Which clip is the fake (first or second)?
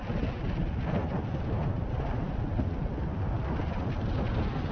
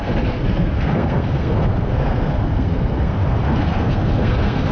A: second